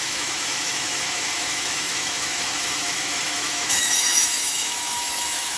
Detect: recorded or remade remade